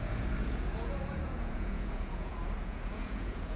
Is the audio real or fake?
fake